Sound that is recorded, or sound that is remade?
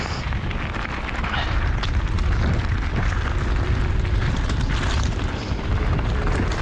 recorded